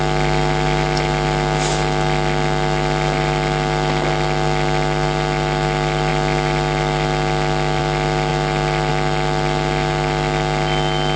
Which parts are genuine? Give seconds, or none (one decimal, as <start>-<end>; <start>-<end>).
0.0-11.2